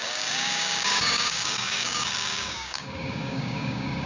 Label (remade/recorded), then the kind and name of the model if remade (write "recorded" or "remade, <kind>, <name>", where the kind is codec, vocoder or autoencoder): remade, codec, DAC